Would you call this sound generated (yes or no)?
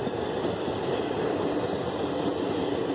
no